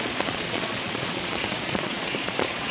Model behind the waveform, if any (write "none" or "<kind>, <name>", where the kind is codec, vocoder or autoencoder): vocoder, Vocos